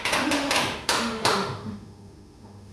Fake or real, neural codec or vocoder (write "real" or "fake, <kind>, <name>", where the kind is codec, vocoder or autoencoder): fake, autoencoder, DAC-VAE